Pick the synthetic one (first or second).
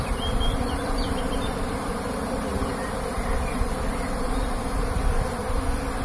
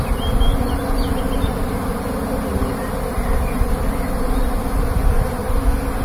first